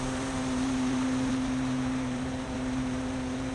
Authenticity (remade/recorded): remade